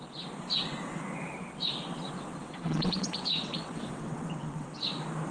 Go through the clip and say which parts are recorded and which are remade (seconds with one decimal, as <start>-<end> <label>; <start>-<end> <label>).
0.0-2.4 recorded; 2.4-4.8 remade; 4.8-5.3 recorded